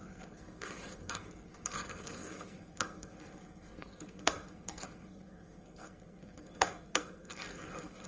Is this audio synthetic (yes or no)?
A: yes